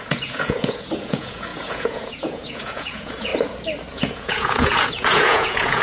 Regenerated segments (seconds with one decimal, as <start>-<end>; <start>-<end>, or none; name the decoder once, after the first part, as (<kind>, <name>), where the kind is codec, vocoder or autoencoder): 0.0-3.3 (vocoder, Vocos); 3.9-5.8

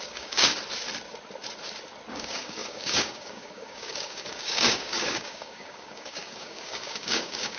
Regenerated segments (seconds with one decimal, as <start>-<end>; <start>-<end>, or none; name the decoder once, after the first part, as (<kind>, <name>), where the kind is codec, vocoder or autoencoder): 0.0-0.5 (codec, DAC); 2.1-7.6

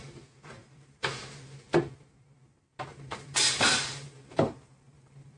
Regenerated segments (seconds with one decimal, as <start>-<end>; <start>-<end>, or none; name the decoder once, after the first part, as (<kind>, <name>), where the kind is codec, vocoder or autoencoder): 0.6-1.3 (vocoder, BigVGAN v2); 2.9-5.4

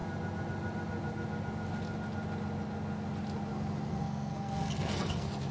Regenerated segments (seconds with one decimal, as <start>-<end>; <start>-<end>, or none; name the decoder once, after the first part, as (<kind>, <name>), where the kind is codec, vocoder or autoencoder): 3.9-5.5 (codec, SNAC)

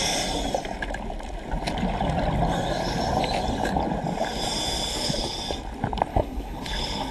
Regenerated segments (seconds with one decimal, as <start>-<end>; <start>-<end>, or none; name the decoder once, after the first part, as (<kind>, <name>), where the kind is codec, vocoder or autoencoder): 4.9-5.4 (codec, HILCodec); 6.1-7.1

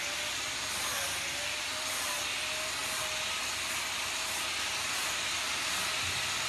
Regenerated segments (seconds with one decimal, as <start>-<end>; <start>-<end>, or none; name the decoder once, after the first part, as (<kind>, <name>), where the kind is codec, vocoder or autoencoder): none

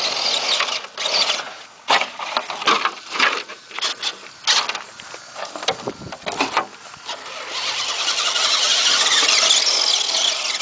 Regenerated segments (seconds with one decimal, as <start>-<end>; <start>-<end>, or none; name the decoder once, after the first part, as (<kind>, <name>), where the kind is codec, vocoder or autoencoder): 1.1-2.2 (vocoder, Vocos)